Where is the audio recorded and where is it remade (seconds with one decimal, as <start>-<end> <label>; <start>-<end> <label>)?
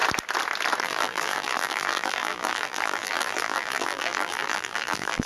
0.0-0.8 recorded; 0.8-5.3 remade